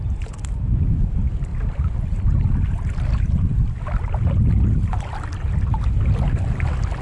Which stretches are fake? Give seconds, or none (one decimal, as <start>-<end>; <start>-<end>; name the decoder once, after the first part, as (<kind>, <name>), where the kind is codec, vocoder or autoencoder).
none